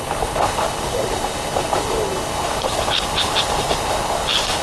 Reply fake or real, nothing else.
fake